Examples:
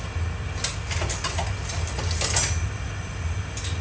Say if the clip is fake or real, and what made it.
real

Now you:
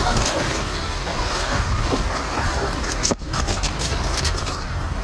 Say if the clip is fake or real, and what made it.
fake, codec, DAC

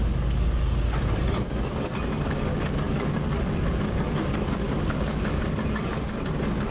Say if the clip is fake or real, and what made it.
fake, codec, DAC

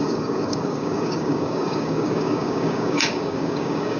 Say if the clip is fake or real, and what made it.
fake, codec, DAC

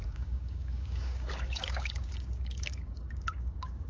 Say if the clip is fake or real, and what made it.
fake, codec, DAC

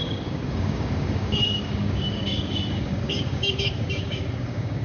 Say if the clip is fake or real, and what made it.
fake, codec, DAC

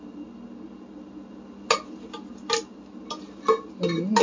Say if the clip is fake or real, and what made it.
real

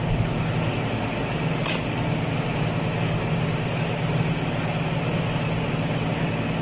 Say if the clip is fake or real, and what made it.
real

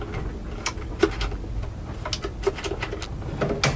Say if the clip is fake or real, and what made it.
real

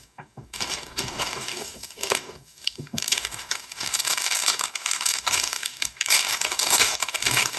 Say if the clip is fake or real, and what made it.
fake, codec, DAC